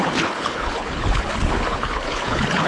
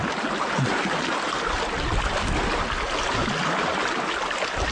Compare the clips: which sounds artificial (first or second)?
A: first